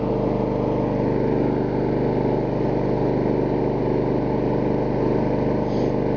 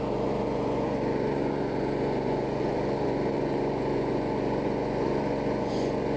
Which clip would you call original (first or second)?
first